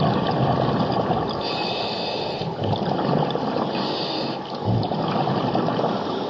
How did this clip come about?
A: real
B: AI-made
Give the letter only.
A